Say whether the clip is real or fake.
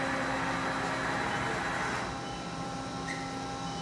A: real